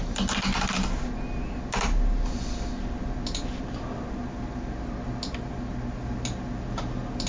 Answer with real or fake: real